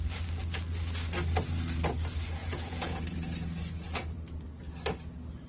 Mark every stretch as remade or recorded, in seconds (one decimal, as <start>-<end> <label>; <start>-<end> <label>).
0.0-2.4 recorded; 2.4-3.0 remade; 3.0-5.5 recorded